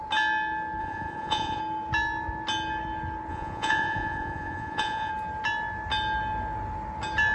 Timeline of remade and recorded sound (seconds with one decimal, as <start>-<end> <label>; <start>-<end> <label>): 0.0-0.8 recorded; 0.8-1.6 remade; 1.6-3.3 recorded; 3.3-5.1 remade; 5.1-7.3 recorded